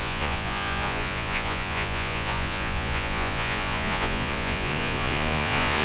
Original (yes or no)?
no